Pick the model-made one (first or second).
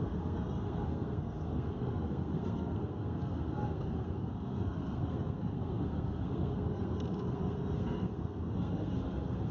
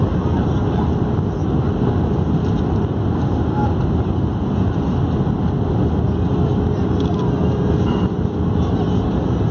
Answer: first